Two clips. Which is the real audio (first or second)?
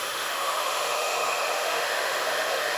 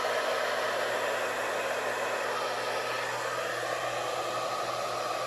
second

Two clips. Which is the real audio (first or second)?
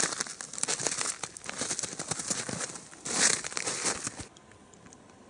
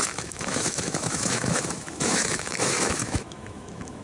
first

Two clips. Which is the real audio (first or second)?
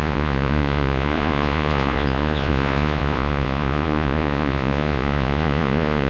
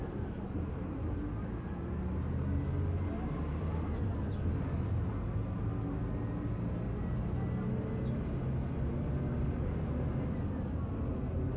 second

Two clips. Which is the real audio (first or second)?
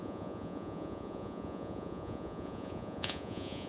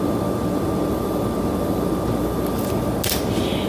second